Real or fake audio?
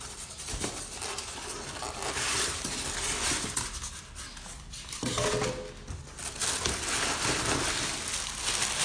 real